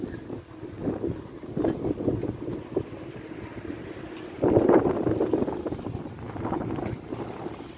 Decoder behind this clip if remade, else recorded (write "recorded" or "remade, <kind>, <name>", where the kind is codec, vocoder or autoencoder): recorded